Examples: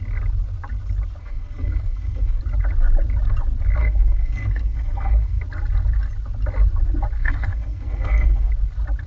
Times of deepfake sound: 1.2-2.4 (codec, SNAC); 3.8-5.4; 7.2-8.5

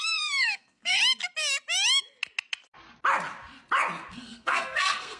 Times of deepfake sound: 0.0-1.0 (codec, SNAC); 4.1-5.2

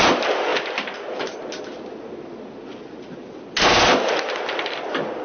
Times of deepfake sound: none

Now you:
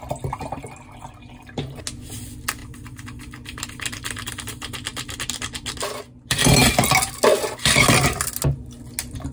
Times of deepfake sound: none